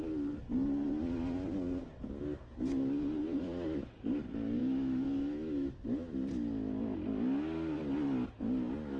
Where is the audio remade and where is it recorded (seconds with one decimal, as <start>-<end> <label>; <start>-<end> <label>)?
0.0-4.6 recorded; 4.6-5.6 remade; 5.6-9.0 recorded